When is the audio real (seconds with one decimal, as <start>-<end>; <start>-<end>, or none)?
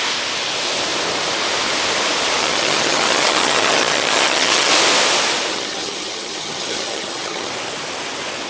0.0-2.4; 4.7-5.5; 7.5-8.5